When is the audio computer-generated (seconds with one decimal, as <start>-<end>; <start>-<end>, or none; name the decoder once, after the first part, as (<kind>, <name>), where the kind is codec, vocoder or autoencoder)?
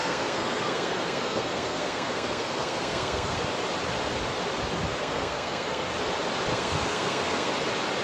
0.0-3.4 (codec, SNAC); 5.0-5.9; 6.5-7.5